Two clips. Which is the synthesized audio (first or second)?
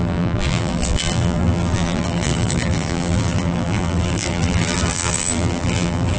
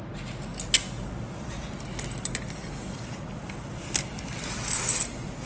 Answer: first